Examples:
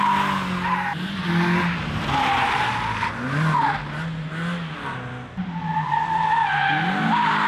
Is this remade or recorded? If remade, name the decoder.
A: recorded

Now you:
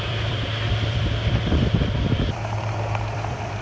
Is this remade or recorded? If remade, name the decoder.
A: remade, vocoder, BigVGAN v2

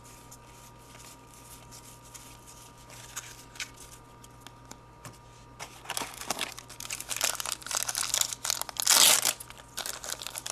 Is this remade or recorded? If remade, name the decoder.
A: recorded